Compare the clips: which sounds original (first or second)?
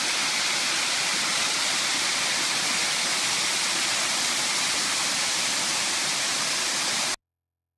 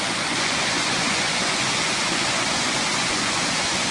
first